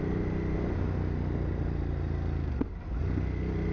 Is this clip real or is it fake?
real